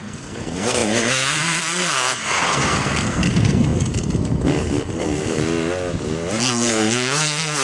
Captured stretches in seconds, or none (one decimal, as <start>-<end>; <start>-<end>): 5.4-6.4